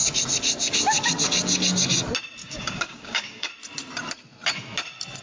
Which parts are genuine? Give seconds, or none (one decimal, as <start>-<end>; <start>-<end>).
0.0-2.4; 3.5-5.2